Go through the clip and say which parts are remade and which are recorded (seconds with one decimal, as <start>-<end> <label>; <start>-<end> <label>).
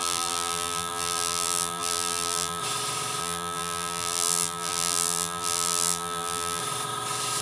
0.0-2.6 remade; 2.6-3.2 recorded; 3.2-6.6 remade; 6.6-7.4 recorded